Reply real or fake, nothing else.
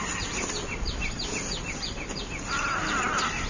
real